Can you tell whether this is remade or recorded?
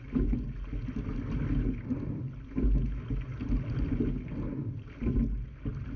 recorded